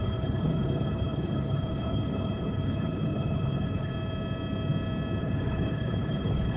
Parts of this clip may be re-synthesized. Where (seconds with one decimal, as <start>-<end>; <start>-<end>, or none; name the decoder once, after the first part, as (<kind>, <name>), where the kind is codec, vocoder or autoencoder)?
0.0-3.9 (codec, HILCodec); 5.2-6.6